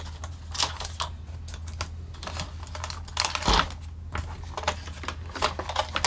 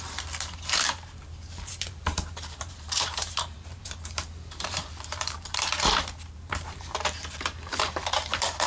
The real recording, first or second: first